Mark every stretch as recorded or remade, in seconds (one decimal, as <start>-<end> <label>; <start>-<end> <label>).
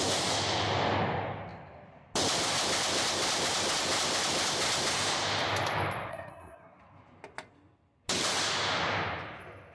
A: 0.0-6.1 recorded; 6.1-6.8 remade; 6.8-9.7 recorded